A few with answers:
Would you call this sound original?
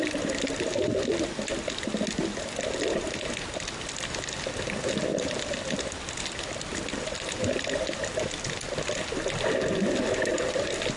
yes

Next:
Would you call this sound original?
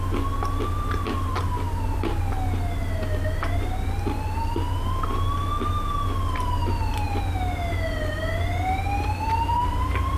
yes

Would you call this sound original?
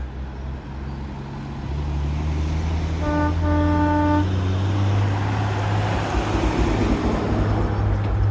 yes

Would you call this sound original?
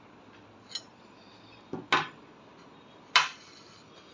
yes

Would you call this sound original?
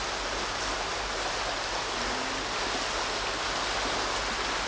yes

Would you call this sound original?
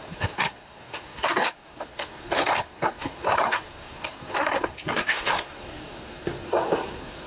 no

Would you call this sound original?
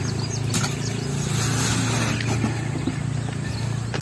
yes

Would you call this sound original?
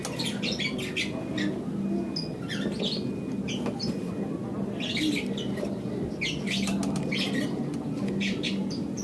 yes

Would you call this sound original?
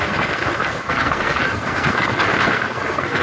no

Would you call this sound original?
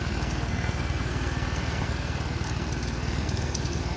no